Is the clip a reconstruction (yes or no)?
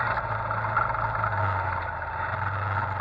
no